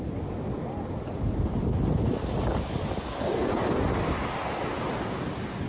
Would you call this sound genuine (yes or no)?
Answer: yes